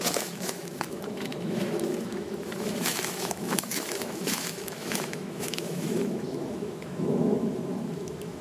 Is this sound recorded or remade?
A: remade